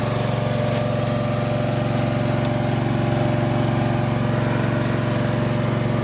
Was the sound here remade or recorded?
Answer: recorded